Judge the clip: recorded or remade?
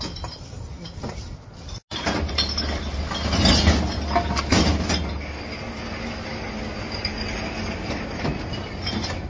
recorded